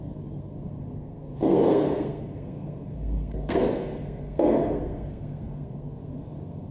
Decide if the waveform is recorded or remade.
remade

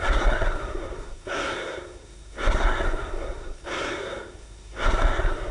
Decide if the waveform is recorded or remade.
remade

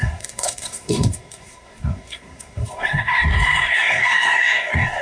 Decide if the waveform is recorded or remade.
remade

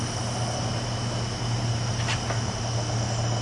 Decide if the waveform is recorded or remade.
recorded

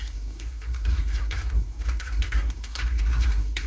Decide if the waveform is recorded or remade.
remade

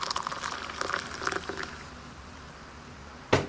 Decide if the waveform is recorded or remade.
recorded